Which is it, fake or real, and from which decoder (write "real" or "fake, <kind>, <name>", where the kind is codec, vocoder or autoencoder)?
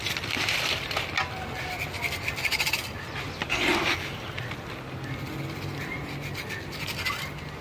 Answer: real